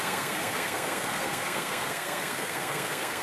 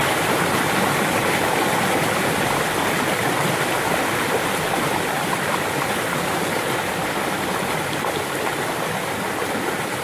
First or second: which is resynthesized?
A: first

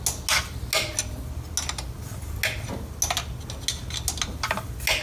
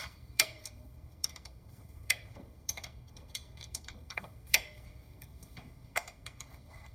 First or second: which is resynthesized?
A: second